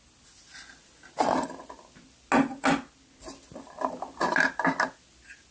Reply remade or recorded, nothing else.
recorded